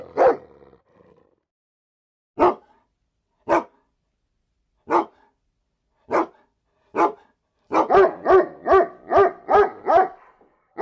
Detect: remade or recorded recorded